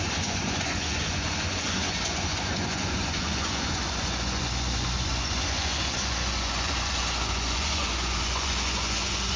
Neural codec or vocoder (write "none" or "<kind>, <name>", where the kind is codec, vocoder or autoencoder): vocoder, Vocos